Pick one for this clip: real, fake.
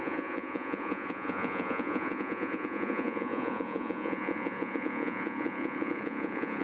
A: fake